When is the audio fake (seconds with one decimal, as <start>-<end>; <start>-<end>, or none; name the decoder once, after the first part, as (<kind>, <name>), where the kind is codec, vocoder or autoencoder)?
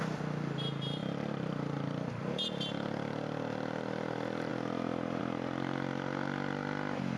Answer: none